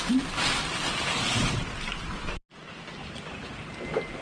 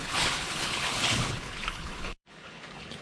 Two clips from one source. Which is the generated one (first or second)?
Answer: second